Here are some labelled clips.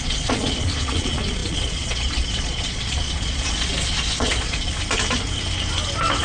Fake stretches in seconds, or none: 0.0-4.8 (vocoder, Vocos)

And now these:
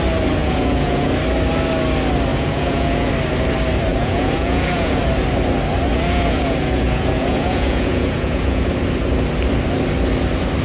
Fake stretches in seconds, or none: 0.4-1.1 (vocoder, Vocos); 2.3-3.1; 3.9-5.0; 5.9-8.7

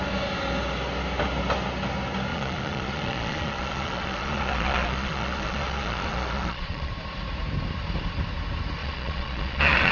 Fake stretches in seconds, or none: 2.3-6.9 (vocoder, Vocos); 8.8-9.9

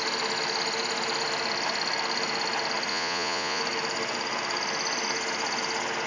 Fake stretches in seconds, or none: 2.9-3.6 (vocoder, Vocos)

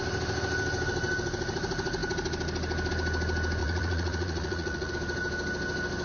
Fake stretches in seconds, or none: 3.6-4.9 (vocoder, Vocos)

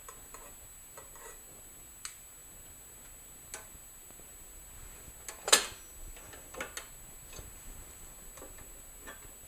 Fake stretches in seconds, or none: none